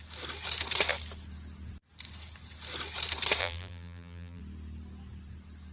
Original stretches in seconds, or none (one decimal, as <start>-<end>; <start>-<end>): 0.0-3.4; 4.4-5.7